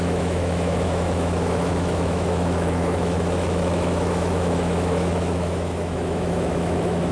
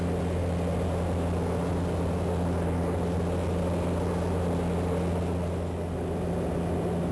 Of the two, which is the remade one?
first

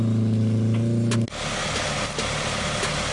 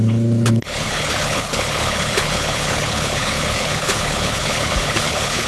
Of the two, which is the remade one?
second